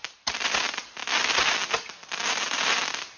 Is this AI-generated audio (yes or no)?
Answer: no